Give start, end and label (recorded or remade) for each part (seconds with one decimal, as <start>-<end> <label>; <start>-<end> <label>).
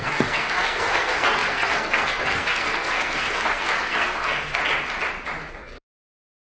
0.0-4.6 remade; 4.6-5.5 recorded; 5.5-6.4 remade